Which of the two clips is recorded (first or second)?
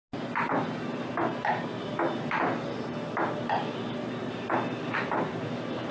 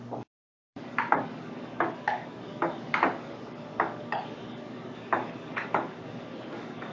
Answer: first